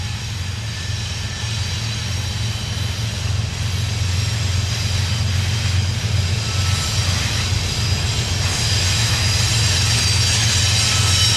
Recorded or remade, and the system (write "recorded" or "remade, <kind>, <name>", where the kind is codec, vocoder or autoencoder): recorded